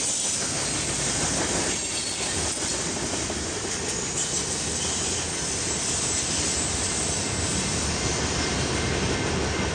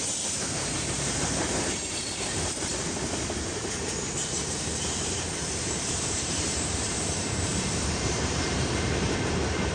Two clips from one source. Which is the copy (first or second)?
second